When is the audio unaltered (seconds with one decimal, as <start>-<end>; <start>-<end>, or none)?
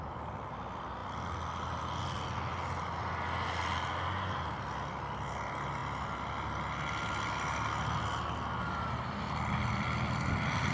0.0-10.7